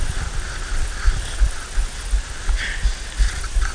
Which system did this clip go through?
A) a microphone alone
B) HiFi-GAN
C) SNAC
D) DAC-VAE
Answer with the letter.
A